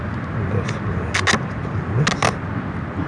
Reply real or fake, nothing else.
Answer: real